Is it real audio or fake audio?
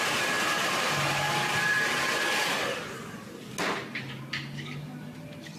real